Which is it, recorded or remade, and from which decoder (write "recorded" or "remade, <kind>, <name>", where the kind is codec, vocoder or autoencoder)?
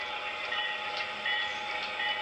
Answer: recorded